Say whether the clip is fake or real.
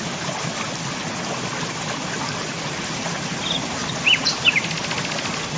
real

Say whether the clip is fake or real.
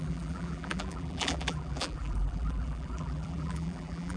fake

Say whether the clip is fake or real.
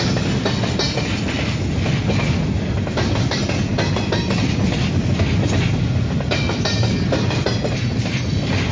real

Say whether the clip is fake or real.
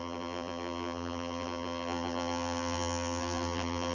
fake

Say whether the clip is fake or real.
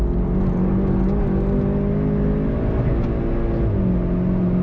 real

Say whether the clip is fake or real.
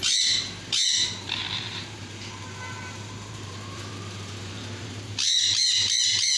fake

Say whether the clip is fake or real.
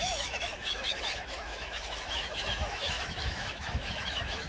fake